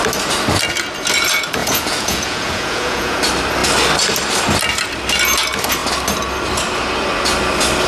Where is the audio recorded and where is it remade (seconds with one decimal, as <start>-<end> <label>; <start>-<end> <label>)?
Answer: 0.0-1.6 recorded; 1.6-3.2 remade; 3.2-7.9 recorded